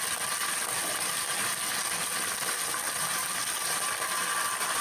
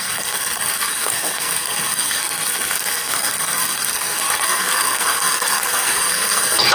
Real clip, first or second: first